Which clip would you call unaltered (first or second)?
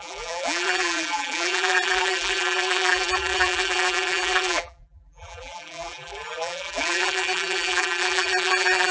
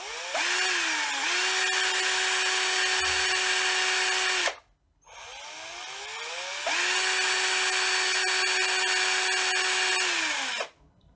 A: second